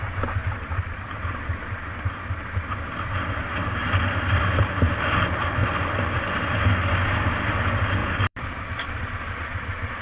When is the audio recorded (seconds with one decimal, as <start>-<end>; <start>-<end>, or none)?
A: 0.0-0.4; 1.2-3.8; 4.4-5.6; 6.4-8.0; 9.3-10.0